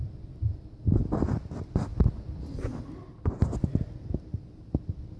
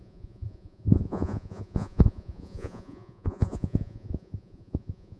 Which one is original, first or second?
first